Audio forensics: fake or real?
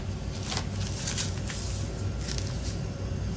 real